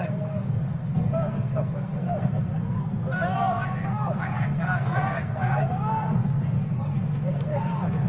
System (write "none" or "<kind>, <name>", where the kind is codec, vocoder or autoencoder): codec, SNAC